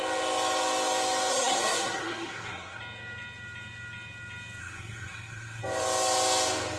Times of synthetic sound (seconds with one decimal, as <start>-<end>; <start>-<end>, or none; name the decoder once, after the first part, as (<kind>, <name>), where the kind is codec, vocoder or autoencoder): 1.3-2.8 (codec, SNAC); 4.6-5.6